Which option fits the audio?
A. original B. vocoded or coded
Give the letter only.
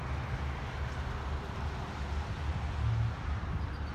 A